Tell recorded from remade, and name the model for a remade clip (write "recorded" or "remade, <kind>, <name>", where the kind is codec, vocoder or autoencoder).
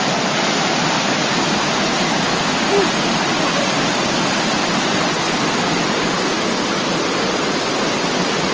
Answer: recorded